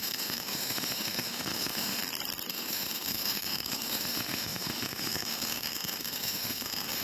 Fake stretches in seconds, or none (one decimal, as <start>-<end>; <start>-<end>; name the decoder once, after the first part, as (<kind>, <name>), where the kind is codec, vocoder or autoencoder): 0.0-2.0 (autoencoder, DAC-VAE); 2.5-7.0